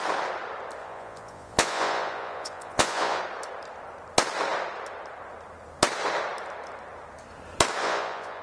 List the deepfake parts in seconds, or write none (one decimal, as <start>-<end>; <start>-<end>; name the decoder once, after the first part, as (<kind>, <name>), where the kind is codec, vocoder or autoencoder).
0.8-3.2 (vocoder, Vocos); 7.8-8.4